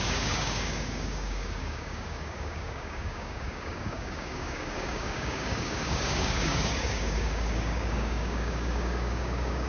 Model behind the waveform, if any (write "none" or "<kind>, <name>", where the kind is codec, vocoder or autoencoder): codec, DAC